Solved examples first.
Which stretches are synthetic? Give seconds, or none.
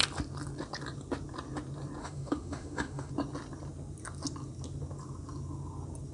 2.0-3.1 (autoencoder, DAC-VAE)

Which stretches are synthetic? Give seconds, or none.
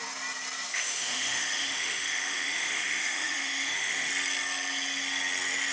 0.7-4.1 (autoencoder, DAC-VAE)